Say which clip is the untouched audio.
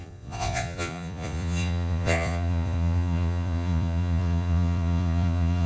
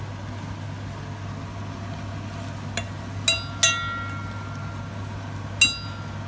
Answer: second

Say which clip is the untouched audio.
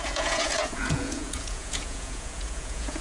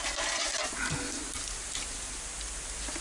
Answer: second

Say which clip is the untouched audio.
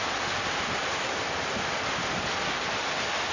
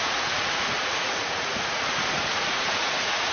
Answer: first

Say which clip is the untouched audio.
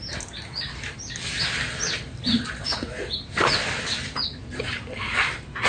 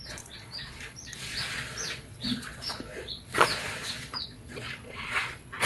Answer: first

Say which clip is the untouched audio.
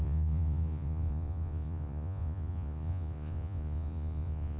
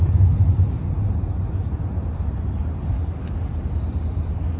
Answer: second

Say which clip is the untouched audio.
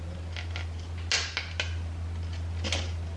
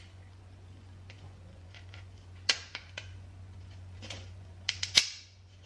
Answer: first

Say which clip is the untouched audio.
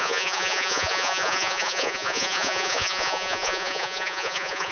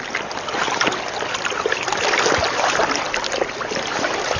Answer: second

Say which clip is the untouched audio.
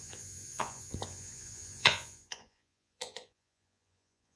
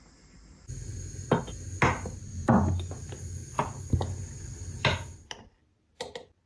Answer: second